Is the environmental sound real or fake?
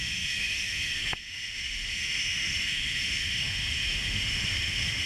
fake